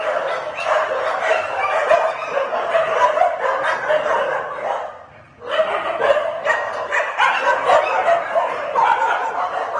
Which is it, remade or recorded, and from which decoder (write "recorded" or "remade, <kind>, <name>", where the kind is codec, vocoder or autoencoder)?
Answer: recorded